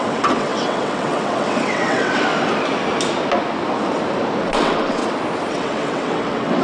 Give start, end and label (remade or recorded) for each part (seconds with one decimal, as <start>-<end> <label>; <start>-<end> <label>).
0.0-2.3 remade; 2.3-4.4 recorded; 4.4-5.0 remade; 5.0-5.5 recorded; 5.5-6.6 remade